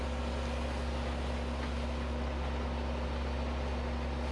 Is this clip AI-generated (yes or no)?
no